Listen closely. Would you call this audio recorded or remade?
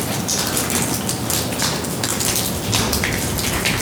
recorded